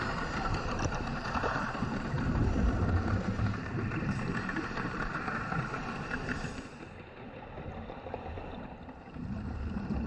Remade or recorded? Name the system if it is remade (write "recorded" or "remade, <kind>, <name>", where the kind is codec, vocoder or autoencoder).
remade, vocoder, BigVGAN v2